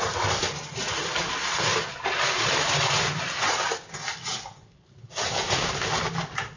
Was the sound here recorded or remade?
recorded